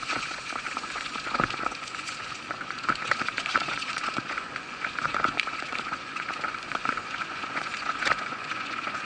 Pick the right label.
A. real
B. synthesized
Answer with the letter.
B